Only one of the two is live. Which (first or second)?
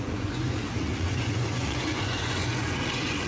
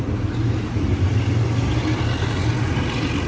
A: second